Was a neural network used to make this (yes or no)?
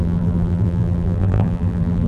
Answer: yes